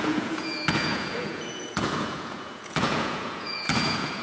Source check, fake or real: fake